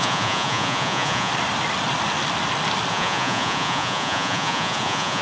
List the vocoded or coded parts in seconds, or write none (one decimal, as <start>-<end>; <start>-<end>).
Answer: 0.0-1.3; 2.9-5.2